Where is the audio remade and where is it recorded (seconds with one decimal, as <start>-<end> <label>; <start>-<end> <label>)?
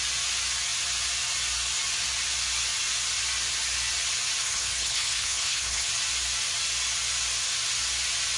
0.0-4.4 recorded; 4.4-5.9 remade; 5.9-8.4 recorded